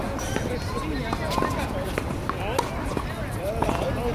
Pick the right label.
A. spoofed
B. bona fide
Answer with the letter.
B